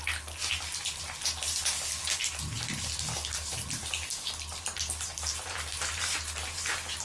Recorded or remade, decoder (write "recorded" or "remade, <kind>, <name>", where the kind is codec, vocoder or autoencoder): recorded